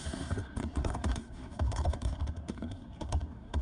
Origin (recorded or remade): remade